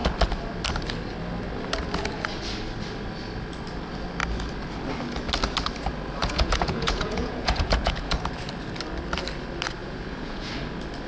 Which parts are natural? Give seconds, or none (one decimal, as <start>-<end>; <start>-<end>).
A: 0.0-6.2; 8.2-9.8; 10.5-11.1